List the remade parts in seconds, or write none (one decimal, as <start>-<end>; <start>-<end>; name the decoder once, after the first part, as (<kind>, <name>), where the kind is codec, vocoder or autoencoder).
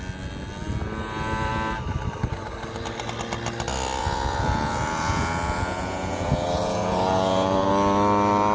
4.0-7.7 (vocoder, Vocos)